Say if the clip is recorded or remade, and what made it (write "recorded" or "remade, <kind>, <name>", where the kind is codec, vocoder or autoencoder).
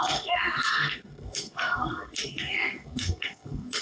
remade, codec, SNAC